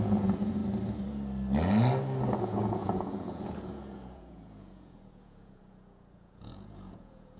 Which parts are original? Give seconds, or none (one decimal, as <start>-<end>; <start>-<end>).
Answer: 0.6-2.4